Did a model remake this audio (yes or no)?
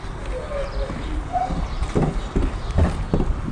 no